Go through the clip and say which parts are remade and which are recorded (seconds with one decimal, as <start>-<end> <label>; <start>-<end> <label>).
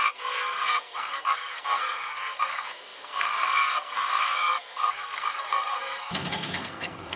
0.0-7.2 remade